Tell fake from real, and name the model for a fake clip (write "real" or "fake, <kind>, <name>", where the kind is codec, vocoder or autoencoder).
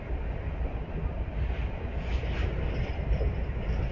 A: real